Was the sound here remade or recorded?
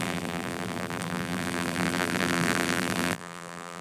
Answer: remade